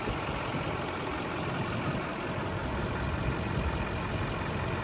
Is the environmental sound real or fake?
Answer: real